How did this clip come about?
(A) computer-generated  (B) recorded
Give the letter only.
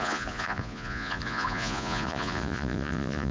A